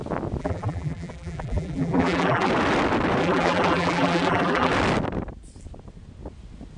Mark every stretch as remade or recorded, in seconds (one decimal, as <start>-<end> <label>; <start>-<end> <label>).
0.0-0.4 recorded; 0.4-2.5 remade; 2.5-3.2 recorded; 3.2-4.7 remade; 4.7-6.8 recorded